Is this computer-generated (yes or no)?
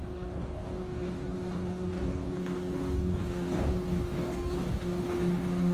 yes